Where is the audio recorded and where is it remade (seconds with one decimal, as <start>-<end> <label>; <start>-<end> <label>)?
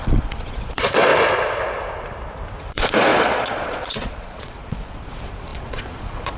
0.0-1.1 remade; 1.1-2.7 recorded; 2.7-6.4 remade